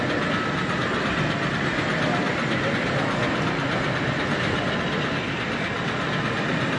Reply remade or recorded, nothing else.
recorded